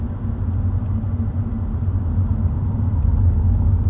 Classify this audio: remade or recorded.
recorded